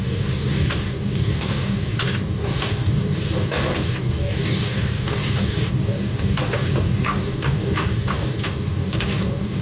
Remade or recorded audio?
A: remade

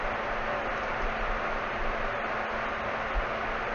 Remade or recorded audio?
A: recorded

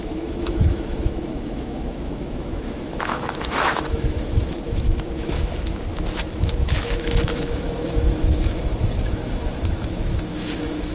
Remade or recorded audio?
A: remade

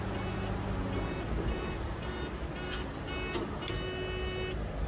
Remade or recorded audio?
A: recorded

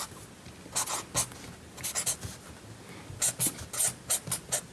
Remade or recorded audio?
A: recorded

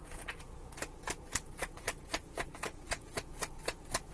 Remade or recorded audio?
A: remade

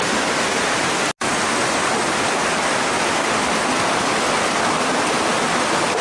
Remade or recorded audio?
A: recorded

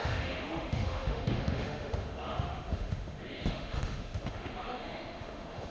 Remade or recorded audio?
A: remade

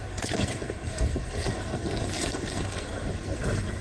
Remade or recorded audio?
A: remade